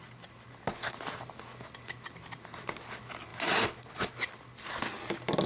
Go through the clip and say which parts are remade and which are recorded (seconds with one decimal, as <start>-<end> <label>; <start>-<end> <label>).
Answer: 0.0-5.5 recorded